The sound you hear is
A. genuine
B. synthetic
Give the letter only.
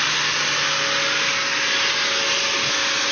A